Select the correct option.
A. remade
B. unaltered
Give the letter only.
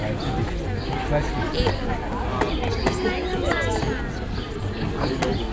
B